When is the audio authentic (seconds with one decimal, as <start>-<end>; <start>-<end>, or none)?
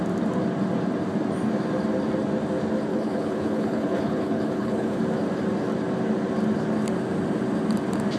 0.0-2.9; 5.0-8.2